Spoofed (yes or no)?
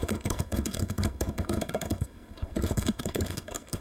yes